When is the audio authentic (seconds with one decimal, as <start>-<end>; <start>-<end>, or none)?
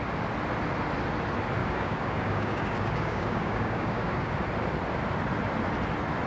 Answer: 0.0-1.6; 4.3-6.3